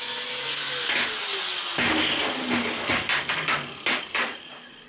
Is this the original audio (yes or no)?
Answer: yes